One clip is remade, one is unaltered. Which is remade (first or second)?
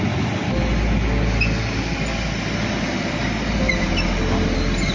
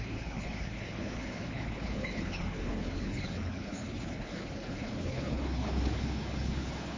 second